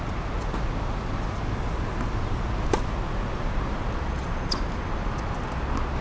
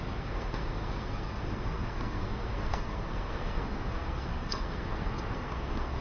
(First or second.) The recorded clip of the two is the first